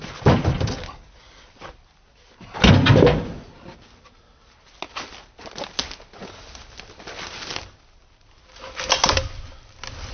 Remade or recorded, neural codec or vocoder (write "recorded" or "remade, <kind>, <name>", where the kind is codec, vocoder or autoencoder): recorded